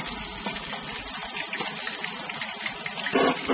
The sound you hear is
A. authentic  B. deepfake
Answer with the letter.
A